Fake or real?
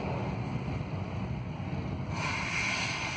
real